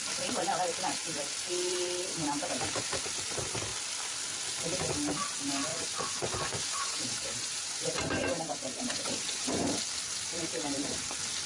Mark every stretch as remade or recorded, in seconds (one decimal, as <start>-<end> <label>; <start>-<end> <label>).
0.0-5.7 recorded; 5.7-9.8 remade; 9.8-11.5 recorded